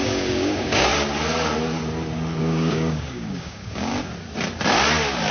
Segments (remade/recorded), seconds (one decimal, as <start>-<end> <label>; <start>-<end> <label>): 0.0-0.9 remade; 0.9-2.4 recorded; 2.4-3.9 remade; 3.9-5.3 recorded